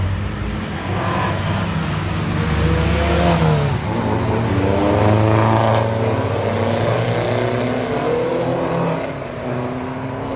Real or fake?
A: real